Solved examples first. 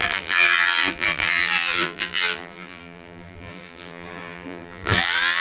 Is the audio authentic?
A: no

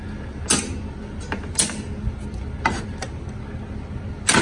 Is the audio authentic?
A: yes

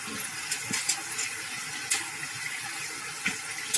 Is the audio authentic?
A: yes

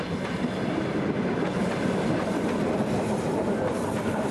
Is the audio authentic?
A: yes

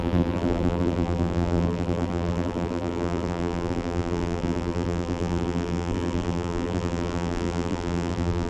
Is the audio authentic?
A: no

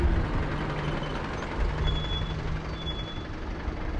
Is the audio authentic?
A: yes